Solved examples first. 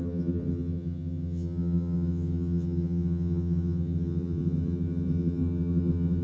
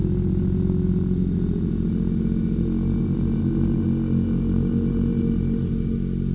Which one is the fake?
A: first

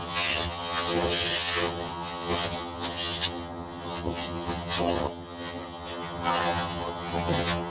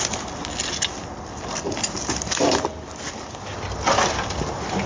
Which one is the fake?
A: first